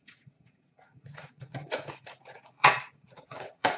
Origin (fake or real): fake